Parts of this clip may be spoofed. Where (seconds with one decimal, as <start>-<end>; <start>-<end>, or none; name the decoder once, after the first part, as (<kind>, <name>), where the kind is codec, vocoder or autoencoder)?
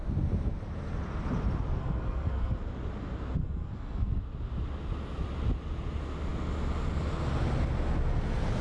1.8-2.6 (codec, SNAC); 3.4-4.2